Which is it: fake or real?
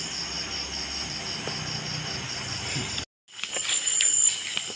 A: real